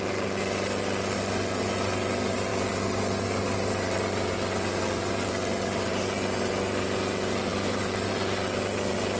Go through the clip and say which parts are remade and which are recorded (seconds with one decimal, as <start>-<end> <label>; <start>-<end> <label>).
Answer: 0.0-9.2 recorded